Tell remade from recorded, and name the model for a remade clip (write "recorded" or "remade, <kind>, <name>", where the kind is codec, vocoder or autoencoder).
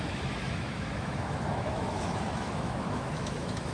remade, autoencoder, DAC-VAE